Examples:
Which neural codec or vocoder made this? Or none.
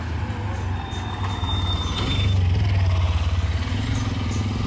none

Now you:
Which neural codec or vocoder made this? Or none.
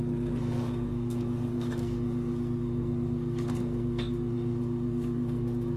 codec, SNAC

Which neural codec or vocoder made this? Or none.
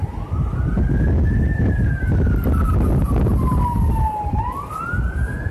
none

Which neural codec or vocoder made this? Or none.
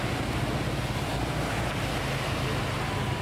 none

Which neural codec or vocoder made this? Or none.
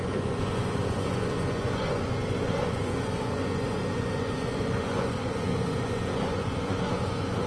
vocoder, Vocos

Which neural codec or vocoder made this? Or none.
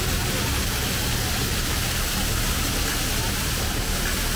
none